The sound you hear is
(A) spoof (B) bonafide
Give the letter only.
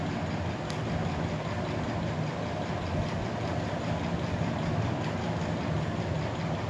B